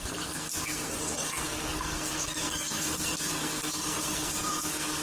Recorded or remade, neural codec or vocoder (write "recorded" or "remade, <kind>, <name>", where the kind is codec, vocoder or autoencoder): remade, codec, SNAC